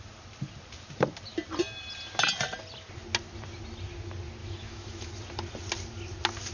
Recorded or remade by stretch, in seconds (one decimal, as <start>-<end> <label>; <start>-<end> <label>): 0.0-4.4 recorded; 4.4-5.1 remade; 5.1-6.5 recorded

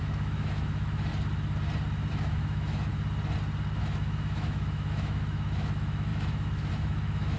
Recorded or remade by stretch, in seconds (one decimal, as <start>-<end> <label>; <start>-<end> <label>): 0.0-1.1 remade; 1.1-2.1 recorded; 2.1-2.9 remade; 2.9-3.8 recorded; 3.8-7.4 remade

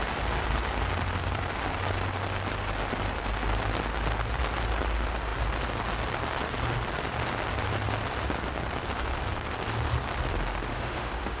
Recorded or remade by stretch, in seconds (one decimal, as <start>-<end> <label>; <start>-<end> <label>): 0.0-10.7 recorded; 10.7-11.4 remade

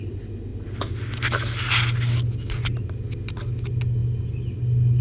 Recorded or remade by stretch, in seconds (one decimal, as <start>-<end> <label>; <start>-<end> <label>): 0.0-5.0 recorded

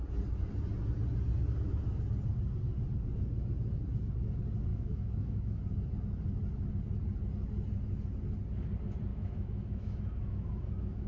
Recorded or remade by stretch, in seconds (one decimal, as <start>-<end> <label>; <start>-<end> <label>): 0.0-4.7 recorded; 4.7-5.6 remade; 5.6-9.1 recorded; 9.1-11.1 remade

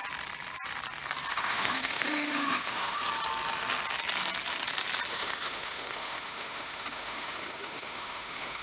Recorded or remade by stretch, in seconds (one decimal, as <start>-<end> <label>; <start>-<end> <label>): 0.0-1.3 recorded; 1.3-3.0 remade; 3.0-5.1 recorded; 5.1-8.6 remade